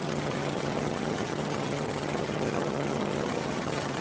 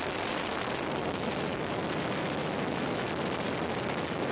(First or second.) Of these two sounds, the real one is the second